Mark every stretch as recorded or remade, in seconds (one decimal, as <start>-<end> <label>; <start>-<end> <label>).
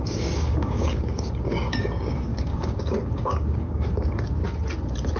0.0-4.4 remade; 4.4-5.2 recorded